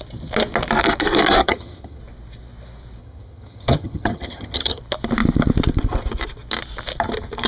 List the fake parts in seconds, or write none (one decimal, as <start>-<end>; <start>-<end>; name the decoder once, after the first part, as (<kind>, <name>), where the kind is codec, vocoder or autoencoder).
1.4-2.0 (vocoder, HiFi-GAN); 3.0-4.8